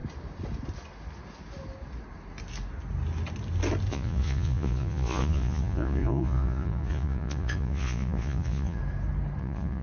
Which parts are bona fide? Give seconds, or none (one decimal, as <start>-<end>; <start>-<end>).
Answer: 0.0-3.9; 8.8-9.4